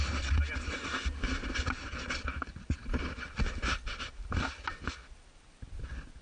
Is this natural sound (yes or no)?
yes